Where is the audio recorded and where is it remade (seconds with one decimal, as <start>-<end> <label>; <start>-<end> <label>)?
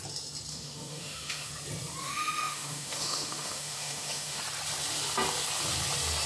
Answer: 0.0-0.5 recorded; 0.5-1.5 remade; 1.5-2.0 recorded; 2.0-4.4 remade; 4.4-6.3 recorded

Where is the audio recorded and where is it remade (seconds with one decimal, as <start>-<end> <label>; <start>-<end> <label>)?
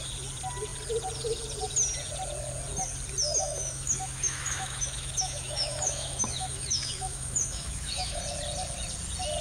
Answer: 0.0-3.3 recorded; 3.3-8.2 remade; 8.2-9.4 recorded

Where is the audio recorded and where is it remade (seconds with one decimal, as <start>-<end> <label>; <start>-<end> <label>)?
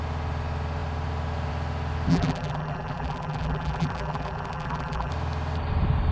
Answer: 0.0-2.1 recorded; 2.1-5.1 remade; 5.1-6.1 recorded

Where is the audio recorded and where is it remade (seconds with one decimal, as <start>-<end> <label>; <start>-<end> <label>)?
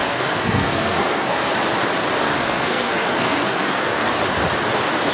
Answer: 0.0-1.5 remade; 1.5-2.2 recorded; 2.2-4.1 remade; 4.1-5.1 recorded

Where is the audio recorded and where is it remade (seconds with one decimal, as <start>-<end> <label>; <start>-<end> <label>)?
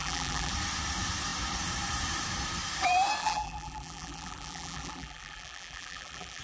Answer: 0.0-0.5 remade; 0.5-3.2 recorded; 3.2-6.4 remade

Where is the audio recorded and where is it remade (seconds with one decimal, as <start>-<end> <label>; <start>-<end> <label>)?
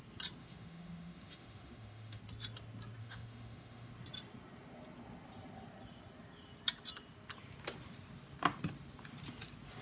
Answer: 0.0-0.4 recorded; 0.4-2.2 remade; 2.2-3.0 recorded; 3.0-3.9 remade; 3.9-9.8 recorded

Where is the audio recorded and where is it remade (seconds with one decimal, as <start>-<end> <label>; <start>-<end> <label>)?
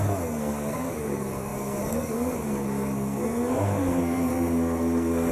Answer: 0.0-5.3 remade